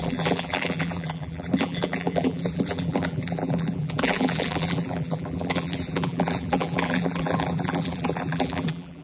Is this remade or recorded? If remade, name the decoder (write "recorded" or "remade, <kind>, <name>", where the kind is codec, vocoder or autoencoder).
remade, vocoder, BigVGAN v2